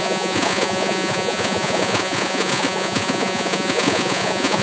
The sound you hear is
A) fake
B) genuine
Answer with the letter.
A